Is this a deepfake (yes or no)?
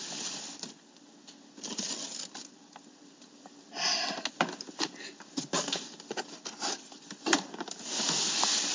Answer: no